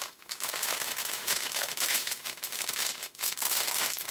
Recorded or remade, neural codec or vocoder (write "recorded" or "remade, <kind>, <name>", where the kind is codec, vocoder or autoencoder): remade, autoencoder, DAC-VAE